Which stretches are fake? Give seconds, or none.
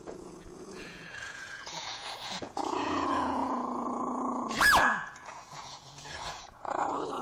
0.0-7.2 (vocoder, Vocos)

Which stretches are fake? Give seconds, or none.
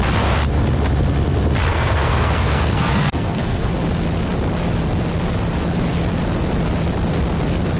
1.7-3.7 (codec, SNAC)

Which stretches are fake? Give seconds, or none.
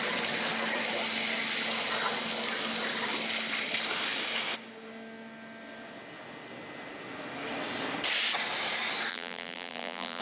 9.1-10.2 (vocoder, BigVGAN v2)